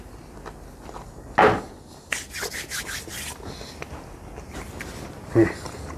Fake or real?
real